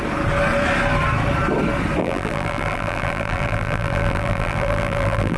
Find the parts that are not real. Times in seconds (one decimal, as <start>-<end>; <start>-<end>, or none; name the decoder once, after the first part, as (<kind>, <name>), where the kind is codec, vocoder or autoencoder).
2.0-5.4 (vocoder, BigVGAN v2)